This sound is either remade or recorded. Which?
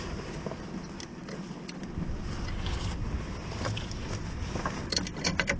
recorded